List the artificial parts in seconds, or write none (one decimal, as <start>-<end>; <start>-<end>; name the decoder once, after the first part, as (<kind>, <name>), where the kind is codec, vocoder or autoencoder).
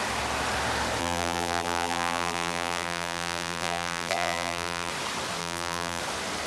1.0-4.9 (vocoder, BigVGAN v2); 5.4-6.0